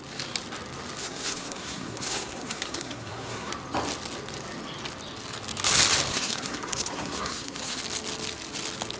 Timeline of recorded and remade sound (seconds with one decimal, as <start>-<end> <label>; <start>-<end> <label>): 0.0-1.0 recorded; 1.0-3.5 remade; 3.5-6.1 recorded; 6.1-7.8 remade; 7.8-9.0 recorded

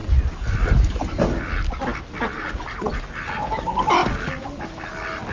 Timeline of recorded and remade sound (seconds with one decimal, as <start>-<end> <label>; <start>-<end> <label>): 0.0-5.3 recorded

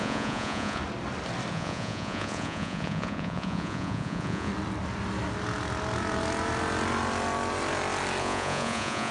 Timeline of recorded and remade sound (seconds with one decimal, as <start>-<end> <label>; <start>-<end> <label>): 0.0-0.8 remade; 0.8-1.5 recorded; 1.5-4.5 remade; 4.5-8.2 recorded; 8.2-9.1 remade

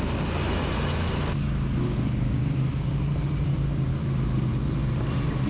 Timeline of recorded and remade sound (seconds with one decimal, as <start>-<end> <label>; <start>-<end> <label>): 0.0-1.3 recorded; 1.3-2.9 remade; 2.9-3.9 recorded; 3.9-4.5 remade; 4.5-5.5 recorded

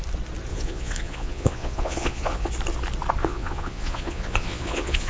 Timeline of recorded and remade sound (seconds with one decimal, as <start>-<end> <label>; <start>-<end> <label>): 0.0-0.5 recorded; 0.5-2.5 remade; 2.5-3.2 recorded; 3.2-5.1 remade

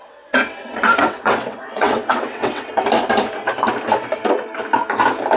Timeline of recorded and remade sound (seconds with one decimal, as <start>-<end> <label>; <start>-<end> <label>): 0.0-2.7 remade; 2.7-5.4 recorded

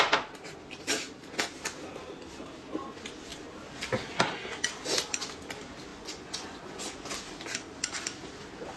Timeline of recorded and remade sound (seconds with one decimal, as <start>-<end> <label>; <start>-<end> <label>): 0.0-5.9 recorded; 5.9-7.1 remade; 7.1-8.8 recorded